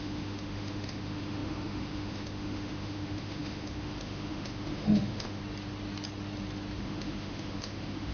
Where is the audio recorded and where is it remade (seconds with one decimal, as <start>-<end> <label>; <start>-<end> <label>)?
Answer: 0.0-5.4 remade; 5.4-6.8 recorded; 6.8-8.1 remade